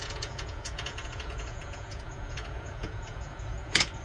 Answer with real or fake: fake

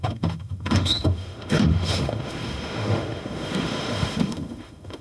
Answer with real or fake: fake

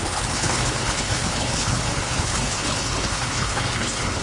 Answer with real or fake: fake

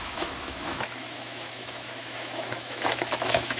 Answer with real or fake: fake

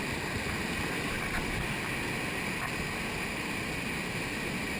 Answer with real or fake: real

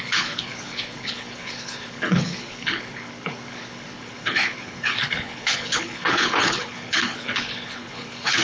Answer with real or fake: fake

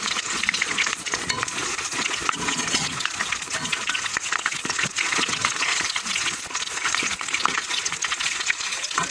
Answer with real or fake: fake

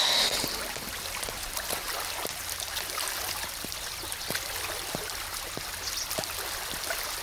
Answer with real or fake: real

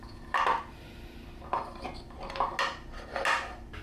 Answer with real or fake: real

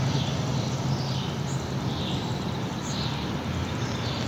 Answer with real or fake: real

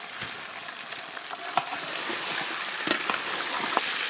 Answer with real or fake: real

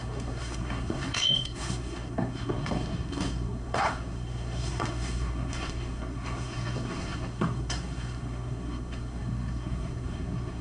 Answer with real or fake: fake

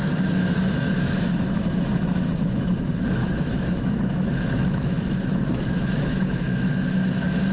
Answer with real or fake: fake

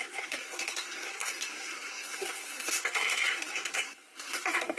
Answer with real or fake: fake